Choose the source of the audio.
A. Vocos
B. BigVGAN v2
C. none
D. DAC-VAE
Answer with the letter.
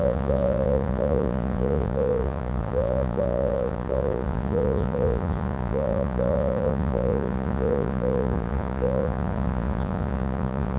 A